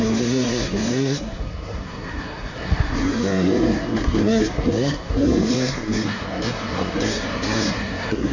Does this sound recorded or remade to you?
remade